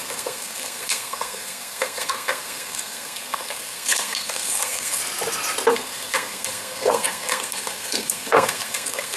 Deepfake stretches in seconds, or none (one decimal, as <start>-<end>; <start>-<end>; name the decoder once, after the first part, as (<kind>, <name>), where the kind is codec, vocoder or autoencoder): 0.0-5.0 (codec, SNAC); 5.7-9.2